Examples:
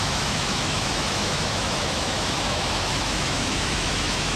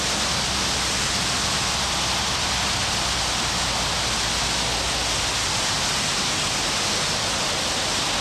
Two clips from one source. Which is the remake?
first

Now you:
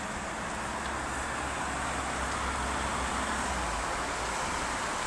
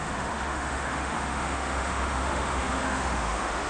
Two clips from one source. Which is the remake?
second